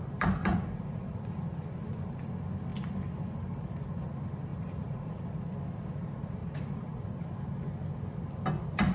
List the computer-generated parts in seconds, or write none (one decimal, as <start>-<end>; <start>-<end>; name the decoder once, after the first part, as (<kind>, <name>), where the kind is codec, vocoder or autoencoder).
0.4-1.4 (vocoder, Vocos); 4.5-5.2; 6.4-7.0

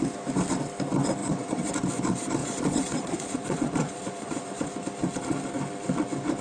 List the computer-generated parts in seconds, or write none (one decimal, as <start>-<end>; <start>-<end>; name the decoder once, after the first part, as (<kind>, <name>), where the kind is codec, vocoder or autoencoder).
1.2-1.7 (vocoder, Vocos); 2.4-4.7

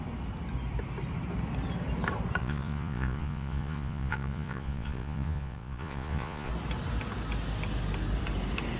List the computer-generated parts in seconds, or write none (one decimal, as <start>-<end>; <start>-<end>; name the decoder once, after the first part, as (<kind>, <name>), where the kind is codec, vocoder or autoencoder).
2.4-6.5 (vocoder, Vocos)

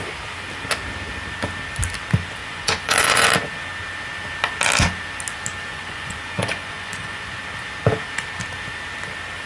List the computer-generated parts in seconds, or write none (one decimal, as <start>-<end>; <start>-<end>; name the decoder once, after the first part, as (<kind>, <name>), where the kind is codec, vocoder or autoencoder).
2.4-3.3 (vocoder, Vocos); 5.7-7.4

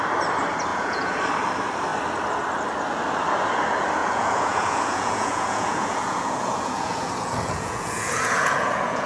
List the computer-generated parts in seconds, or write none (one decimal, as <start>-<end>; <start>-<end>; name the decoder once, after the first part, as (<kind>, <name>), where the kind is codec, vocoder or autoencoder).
0.7-1.2 (vocoder, Vocos); 4.0-9.1

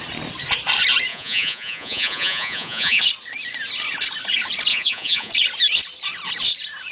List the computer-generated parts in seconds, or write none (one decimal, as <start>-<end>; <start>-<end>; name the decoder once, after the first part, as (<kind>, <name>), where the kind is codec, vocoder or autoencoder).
1.1-3.0 (vocoder, Vocos); 4.7-5.3

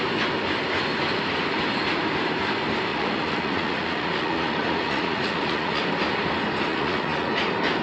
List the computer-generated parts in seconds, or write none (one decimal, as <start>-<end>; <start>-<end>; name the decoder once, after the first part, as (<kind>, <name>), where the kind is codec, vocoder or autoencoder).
2.9-5.8 (vocoder, Vocos); 6.7-7.3